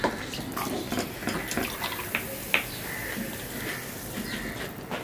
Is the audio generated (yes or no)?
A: no